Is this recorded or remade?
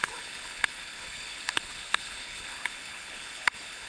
remade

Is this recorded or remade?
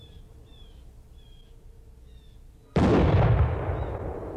recorded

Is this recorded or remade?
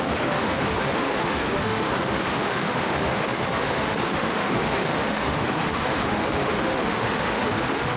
remade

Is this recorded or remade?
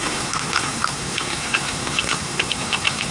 remade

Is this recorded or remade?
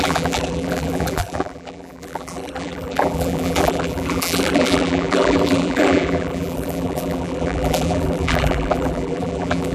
remade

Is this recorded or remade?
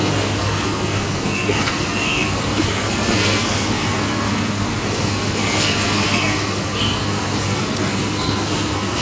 remade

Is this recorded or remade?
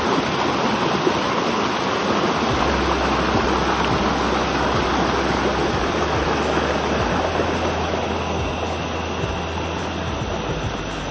recorded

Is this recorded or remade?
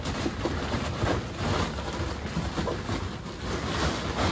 recorded